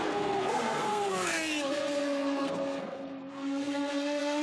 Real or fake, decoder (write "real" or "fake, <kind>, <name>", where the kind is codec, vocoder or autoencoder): fake, codec, SNAC